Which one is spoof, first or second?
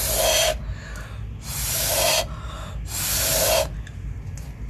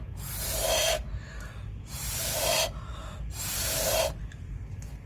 second